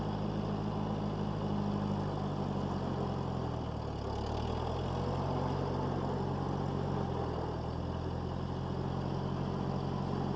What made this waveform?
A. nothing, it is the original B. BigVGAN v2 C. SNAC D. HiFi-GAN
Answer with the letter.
A